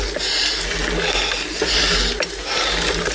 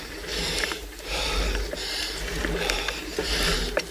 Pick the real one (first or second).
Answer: first